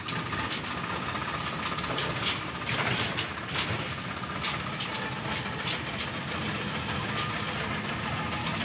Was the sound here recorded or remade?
recorded